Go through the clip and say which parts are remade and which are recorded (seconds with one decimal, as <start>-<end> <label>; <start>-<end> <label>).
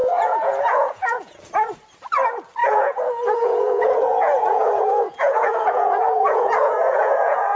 0.0-1.4 remade; 1.4-2.6 recorded; 2.6-7.6 remade